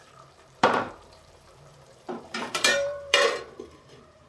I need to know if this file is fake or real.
fake